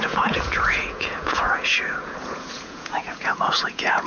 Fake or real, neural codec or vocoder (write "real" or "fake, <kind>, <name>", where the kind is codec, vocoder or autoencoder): fake, vocoder, Vocos